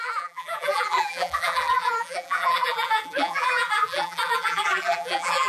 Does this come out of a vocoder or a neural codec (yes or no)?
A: yes